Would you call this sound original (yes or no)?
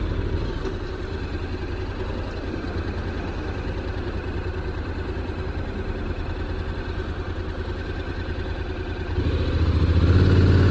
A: yes